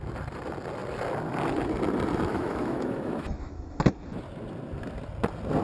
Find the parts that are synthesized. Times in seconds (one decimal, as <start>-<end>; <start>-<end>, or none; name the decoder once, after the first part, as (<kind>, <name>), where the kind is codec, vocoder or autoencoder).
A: 2.3-3.8 (autoencoder, DAC-VAE)